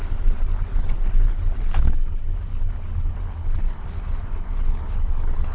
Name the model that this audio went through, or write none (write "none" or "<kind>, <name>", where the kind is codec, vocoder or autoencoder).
codec, HILCodec